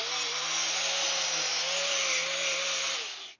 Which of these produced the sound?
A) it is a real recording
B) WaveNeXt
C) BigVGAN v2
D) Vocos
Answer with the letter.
A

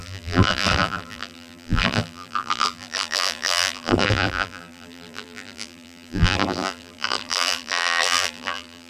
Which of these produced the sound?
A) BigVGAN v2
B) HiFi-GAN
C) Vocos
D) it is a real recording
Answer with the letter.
A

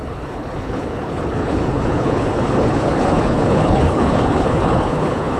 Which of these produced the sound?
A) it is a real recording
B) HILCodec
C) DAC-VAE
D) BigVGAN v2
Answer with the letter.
B